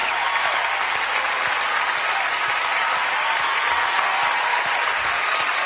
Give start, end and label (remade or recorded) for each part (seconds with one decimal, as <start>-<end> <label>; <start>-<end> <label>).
0.0-5.7 recorded